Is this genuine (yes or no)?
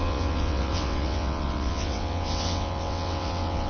no